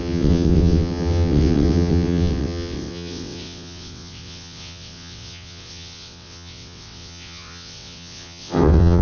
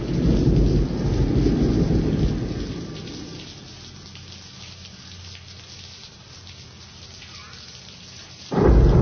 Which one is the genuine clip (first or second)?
second